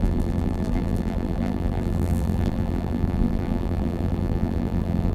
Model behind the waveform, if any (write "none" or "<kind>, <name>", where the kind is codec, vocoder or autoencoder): vocoder, BigVGAN v2